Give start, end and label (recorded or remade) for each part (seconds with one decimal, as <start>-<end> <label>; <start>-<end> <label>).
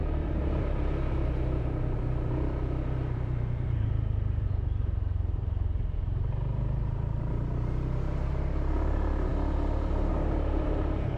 0.0-9.3 remade; 9.3-10.1 recorded; 10.1-11.2 remade